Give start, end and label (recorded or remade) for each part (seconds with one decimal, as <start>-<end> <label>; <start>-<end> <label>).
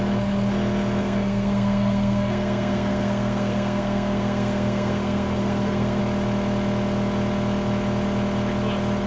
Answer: 0.0-1.0 recorded; 1.0-6.0 remade; 6.0-9.1 recorded